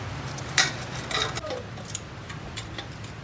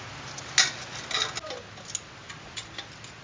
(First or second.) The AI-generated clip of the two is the first